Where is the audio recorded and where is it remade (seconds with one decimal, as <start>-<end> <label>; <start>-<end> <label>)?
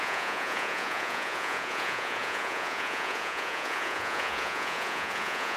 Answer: 0.0-5.6 remade